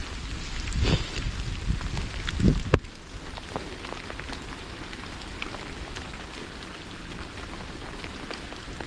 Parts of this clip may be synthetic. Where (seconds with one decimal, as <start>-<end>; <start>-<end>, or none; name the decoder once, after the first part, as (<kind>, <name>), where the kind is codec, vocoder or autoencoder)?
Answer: 2.7-6.1 (vocoder, BigVGAN v2); 7.4-8.9

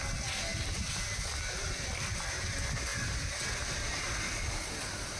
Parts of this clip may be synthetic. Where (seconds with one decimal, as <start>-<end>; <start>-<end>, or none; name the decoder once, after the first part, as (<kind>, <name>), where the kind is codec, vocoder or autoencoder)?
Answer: none

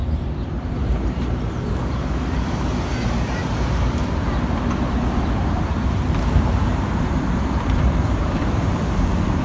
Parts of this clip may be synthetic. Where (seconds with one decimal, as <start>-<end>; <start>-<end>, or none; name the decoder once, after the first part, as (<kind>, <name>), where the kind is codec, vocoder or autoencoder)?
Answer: 0.6-9.4 (vocoder, BigVGAN v2)